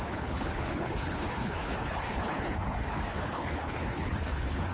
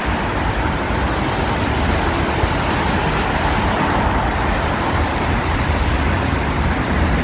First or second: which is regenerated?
first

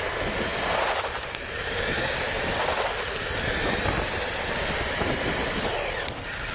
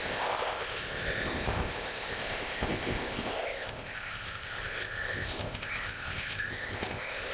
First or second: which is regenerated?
second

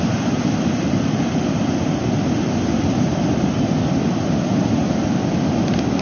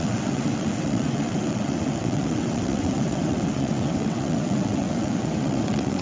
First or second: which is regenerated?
second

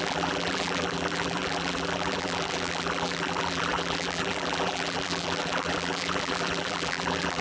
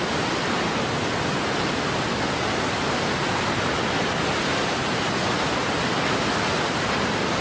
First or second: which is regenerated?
first